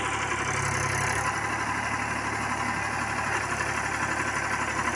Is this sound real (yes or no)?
yes